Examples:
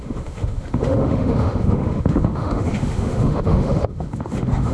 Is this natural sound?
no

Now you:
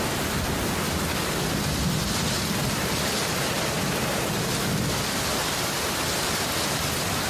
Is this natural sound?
yes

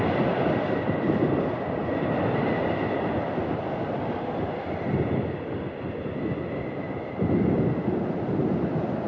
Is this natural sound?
yes